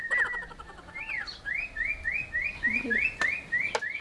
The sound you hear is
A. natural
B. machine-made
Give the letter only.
A